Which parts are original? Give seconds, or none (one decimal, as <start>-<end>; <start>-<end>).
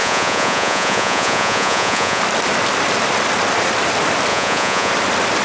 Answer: 2.2-4.3; 4.9-5.4